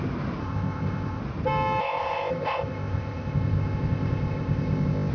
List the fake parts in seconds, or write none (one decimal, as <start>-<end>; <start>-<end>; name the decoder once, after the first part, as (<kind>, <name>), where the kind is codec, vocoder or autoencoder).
0.4-1.2 (codec, ZipCodec); 1.8-5.1